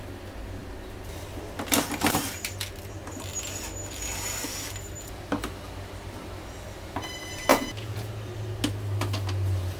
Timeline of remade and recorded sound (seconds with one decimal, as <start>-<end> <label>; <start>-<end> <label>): 0.0-7.5 recorded; 7.5-8.1 remade; 8.1-9.8 recorded